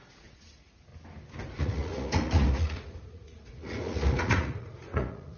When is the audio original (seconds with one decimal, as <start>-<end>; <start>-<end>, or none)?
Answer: 0.9-1.5